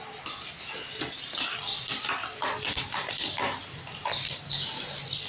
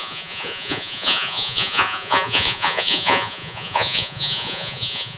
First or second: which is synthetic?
second